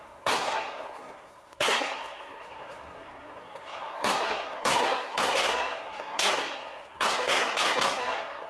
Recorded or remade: remade